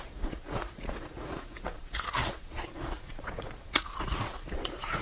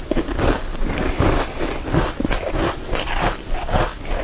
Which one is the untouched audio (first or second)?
second